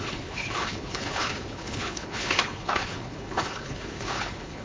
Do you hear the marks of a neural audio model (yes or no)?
yes